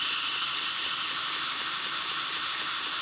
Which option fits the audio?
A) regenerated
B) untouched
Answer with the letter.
A